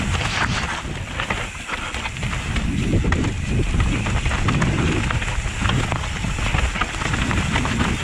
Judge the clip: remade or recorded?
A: recorded